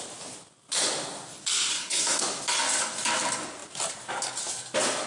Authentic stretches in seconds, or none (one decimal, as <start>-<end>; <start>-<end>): 0.0-1.7; 2.2-5.1